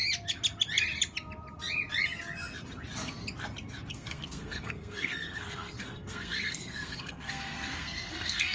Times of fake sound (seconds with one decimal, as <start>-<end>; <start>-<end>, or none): 3.9-8.5